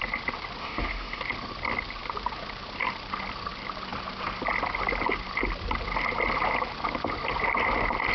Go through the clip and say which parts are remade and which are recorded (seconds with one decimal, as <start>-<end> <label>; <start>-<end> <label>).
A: 0.0-0.6 recorded; 0.6-1.2 remade; 1.2-8.1 recorded